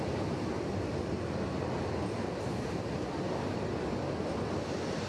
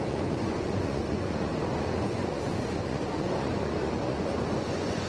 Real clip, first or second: first